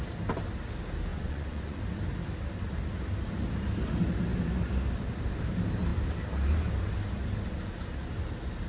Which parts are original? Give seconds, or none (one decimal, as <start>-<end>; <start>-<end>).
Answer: 0.0-1.1; 1.8-8.7